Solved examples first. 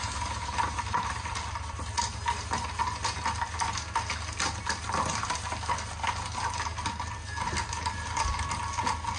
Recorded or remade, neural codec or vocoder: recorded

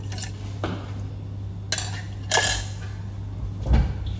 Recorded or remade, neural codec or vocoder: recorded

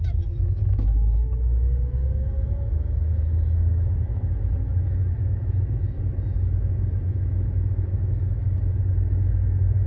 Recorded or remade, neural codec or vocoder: remade, autoencoder, DAC-VAE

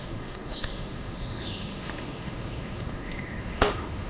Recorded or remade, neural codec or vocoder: remade, autoencoder, DAC-VAE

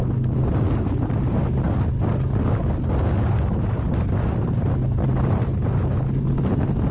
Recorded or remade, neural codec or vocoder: recorded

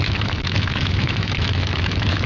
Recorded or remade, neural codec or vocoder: remade, autoencoder, DAC-VAE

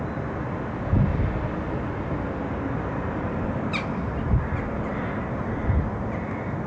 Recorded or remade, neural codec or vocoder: recorded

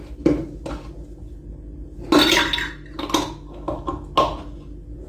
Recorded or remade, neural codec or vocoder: recorded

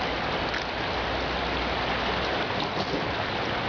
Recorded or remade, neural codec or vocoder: recorded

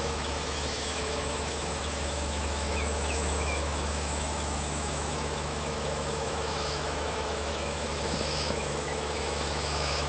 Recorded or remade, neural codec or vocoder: remade, autoencoder, DAC-VAE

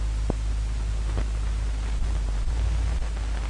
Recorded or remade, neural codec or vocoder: recorded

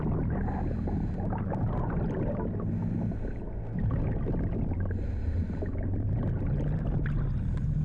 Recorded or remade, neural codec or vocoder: recorded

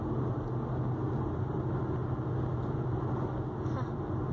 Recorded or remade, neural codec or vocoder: recorded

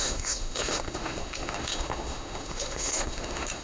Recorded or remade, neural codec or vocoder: remade, autoencoder, DAC-VAE